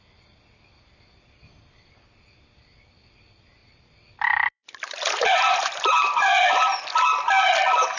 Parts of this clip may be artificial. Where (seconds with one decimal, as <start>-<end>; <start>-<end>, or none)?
3.6-5.8